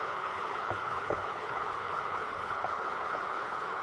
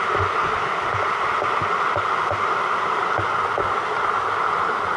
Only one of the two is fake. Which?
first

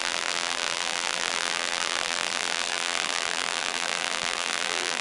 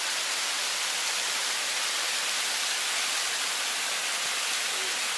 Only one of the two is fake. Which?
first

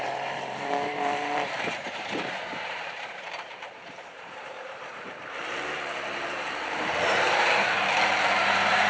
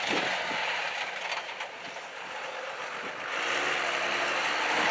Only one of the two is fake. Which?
first